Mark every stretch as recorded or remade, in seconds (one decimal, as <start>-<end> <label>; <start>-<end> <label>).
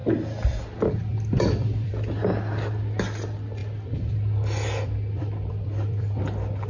0.0-1.1 recorded; 1.1-1.9 remade; 1.9-3.6 recorded; 3.6-6.2 remade; 6.2-6.7 recorded